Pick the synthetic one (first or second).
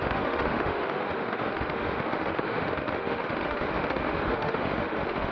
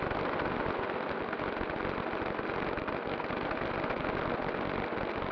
first